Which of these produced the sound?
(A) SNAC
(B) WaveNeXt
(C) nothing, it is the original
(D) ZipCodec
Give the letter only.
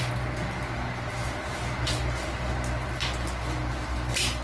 C